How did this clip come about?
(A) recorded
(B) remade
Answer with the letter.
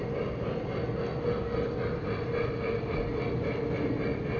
A